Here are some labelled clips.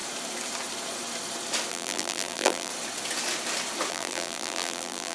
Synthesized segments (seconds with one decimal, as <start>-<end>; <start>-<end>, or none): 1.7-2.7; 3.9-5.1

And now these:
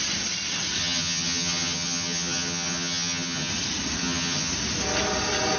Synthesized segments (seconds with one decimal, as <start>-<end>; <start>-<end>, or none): 0.8-3.5; 4.0-4.5

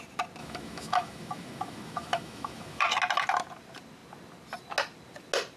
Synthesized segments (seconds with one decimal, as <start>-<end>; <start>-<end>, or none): 0.4-2.8

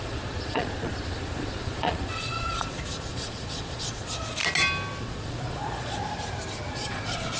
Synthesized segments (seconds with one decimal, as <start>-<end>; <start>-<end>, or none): 0.0-4.4; 5.0-6.0; 6.7-7.4

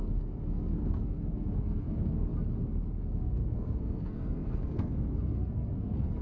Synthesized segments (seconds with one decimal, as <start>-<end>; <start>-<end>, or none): 0.0-2.3; 3.2-6.2

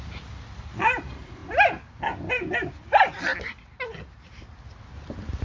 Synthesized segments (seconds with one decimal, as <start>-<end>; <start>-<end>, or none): none